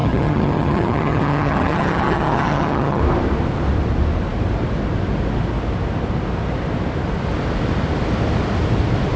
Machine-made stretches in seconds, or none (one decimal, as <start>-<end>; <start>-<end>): 0.0-3.0